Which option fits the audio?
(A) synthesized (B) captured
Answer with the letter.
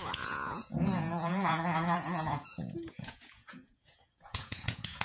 A